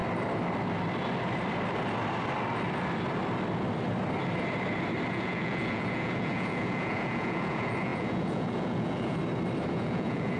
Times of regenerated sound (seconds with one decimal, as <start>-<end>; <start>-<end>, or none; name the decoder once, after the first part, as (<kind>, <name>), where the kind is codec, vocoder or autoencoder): 5.1-9.2 (vocoder, Vocos); 9.7-10.4